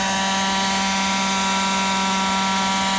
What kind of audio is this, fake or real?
real